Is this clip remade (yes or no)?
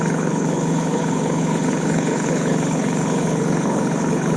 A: yes